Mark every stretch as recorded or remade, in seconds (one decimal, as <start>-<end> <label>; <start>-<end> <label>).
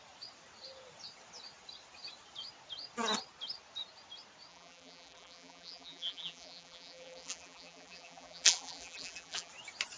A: 0.0-4.5 recorded; 4.5-9.5 remade; 9.5-10.0 recorded